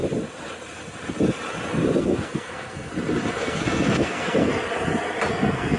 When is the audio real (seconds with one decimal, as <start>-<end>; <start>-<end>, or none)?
0.0-2.0; 2.9-3.4; 4.5-5.3